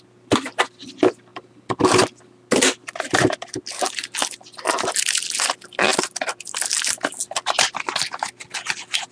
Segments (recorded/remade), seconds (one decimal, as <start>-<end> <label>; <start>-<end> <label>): 0.0-9.1 recorded